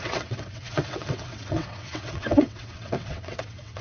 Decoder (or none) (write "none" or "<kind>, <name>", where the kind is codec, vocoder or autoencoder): vocoder, WaveNeXt